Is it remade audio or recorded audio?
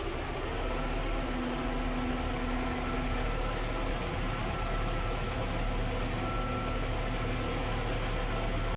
recorded